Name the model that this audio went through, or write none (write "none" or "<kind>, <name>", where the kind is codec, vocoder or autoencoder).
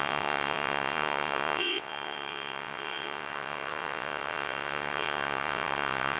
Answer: vocoder, WaveNeXt